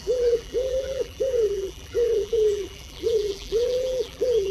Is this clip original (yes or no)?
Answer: no